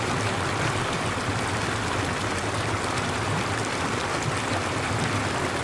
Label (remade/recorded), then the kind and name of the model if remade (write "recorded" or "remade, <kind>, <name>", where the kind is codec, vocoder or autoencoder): recorded